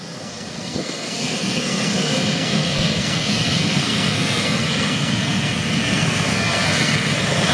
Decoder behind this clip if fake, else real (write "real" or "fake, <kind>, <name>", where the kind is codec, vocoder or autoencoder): fake, codec, SNAC